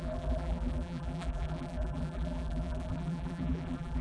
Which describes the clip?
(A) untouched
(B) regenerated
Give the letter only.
B